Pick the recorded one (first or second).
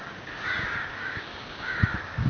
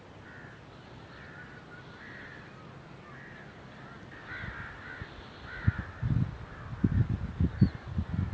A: second